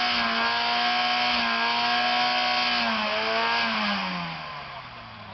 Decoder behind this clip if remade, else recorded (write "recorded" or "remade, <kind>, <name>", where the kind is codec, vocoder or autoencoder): recorded